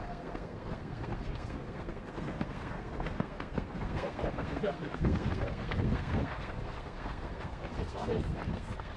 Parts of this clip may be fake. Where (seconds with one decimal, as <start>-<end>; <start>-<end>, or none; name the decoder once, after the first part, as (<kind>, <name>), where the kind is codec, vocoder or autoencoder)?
0.0-9.0 (codec, SNAC)